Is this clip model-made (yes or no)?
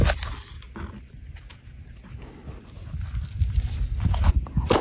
no